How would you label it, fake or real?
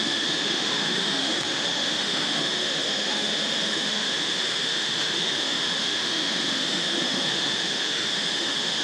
fake